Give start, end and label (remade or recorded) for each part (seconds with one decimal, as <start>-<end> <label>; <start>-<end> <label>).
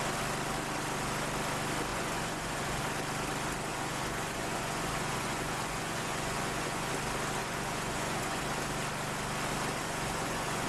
0.0-1.9 recorded; 1.9-2.8 remade; 2.8-3.7 recorded; 3.7-6.9 remade; 6.9-7.4 recorded; 7.4-8.4 remade; 8.4-9.8 recorded; 9.8-10.7 remade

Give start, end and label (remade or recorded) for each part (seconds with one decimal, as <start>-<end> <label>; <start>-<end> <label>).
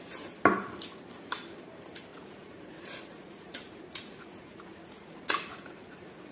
0.0-2.1 recorded; 2.1-6.3 remade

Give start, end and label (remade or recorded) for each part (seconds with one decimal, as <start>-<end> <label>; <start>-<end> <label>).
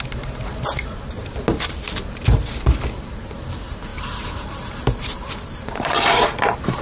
0.0-6.8 recorded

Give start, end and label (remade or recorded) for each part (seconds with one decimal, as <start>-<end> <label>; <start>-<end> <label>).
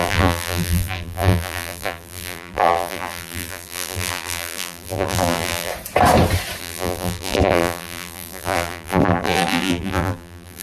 0.0-5.7 remade; 5.7-6.6 recorded; 6.6-10.6 remade